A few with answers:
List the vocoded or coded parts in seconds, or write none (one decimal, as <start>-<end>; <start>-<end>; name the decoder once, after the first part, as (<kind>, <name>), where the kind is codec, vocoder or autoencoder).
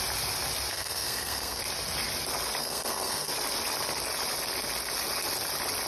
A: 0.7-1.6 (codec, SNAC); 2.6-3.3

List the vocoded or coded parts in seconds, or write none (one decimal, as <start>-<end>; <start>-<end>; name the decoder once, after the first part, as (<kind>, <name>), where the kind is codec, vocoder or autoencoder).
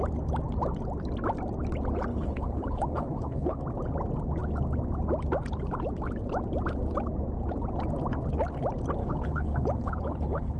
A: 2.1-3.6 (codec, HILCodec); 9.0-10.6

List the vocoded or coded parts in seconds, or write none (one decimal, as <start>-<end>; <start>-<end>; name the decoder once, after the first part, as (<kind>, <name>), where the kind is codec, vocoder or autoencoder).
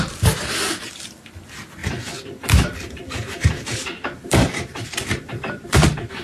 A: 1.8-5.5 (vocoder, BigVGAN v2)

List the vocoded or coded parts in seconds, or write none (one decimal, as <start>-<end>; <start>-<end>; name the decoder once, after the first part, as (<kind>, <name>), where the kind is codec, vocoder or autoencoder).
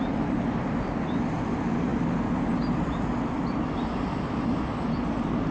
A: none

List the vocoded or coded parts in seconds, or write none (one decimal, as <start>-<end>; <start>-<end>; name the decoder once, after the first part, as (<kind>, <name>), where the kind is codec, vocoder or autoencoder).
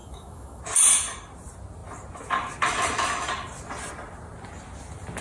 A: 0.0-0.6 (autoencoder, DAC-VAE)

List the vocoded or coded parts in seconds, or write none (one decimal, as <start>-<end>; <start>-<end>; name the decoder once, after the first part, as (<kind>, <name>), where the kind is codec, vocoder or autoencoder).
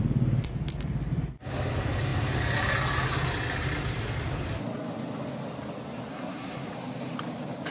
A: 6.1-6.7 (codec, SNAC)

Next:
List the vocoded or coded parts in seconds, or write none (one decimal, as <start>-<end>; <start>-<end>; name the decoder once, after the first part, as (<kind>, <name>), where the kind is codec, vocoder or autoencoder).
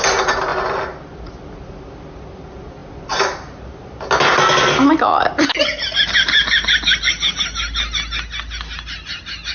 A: none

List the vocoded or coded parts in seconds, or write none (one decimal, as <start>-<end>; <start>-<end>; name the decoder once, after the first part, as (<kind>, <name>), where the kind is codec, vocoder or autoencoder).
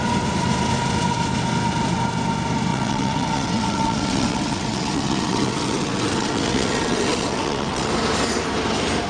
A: 2.7-7.9 (vocoder, WaveNeXt)